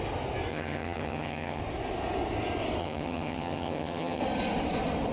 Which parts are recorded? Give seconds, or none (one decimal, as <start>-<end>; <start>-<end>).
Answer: 0.0-0.5; 1.6-2.8; 4.2-5.1